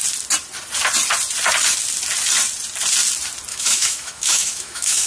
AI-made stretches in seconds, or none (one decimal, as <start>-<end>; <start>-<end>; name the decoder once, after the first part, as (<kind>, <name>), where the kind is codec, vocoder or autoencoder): 3.5-5.1 (autoencoder, DAC-VAE)